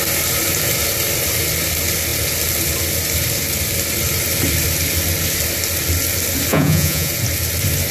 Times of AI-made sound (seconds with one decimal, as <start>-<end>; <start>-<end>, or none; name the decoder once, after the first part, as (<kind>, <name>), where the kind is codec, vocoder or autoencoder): 6.5-7.1 (vocoder, Vocos)